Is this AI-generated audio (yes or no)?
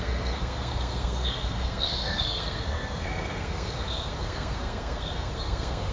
yes